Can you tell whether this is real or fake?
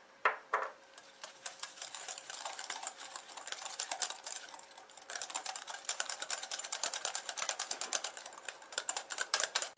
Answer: fake